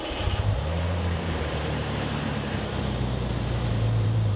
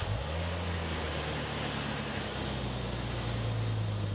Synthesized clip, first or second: first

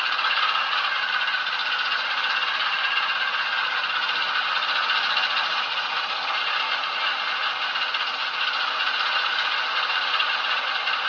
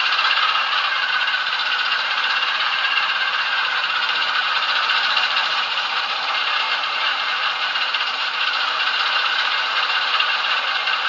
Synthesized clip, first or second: second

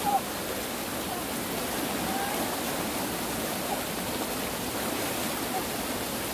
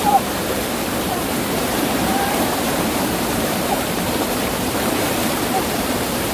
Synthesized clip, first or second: second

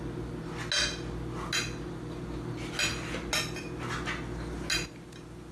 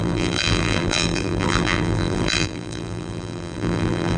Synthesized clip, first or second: second